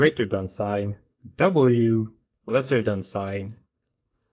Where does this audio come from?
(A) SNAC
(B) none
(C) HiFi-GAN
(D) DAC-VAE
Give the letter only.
A